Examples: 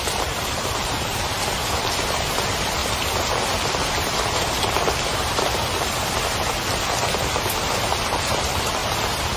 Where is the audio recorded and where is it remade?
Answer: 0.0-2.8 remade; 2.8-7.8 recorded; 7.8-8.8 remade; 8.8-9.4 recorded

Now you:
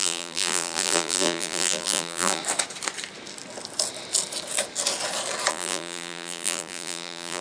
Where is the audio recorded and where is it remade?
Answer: 0.0-2.4 remade; 2.4-5.5 recorded; 5.5-7.4 remade